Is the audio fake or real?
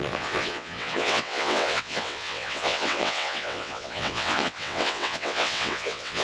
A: fake